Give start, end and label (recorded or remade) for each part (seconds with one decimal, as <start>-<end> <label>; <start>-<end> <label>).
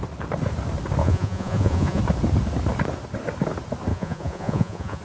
0.0-1.0 recorded; 1.0-2.0 remade; 2.0-3.9 recorded; 3.9-5.0 remade